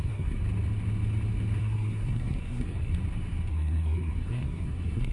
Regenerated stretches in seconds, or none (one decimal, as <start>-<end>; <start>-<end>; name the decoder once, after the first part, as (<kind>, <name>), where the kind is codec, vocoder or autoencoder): 0.0-0.4 (codec, SNAC); 1.6-2.9; 3.5-5.1